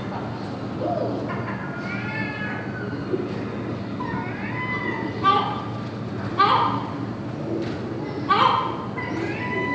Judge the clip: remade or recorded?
recorded